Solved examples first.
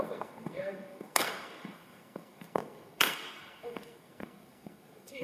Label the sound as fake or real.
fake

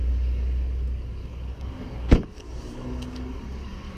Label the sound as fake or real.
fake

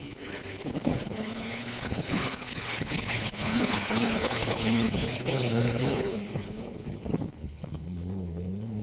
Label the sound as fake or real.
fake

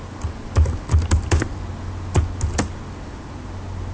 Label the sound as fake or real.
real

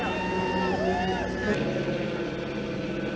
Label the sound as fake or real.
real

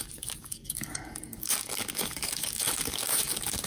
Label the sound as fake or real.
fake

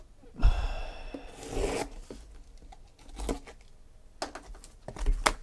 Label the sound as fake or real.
real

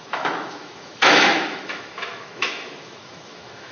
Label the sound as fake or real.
fake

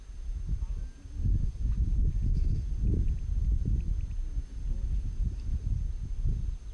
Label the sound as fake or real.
real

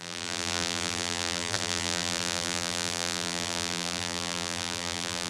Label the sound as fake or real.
fake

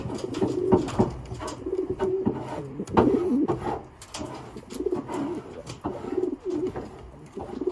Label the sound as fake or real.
real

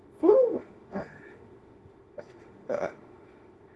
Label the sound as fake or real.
fake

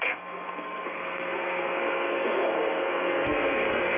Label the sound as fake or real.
fake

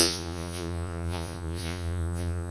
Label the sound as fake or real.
fake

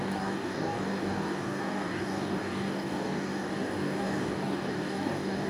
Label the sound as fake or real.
fake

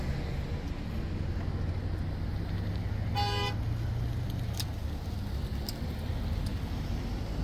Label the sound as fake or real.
real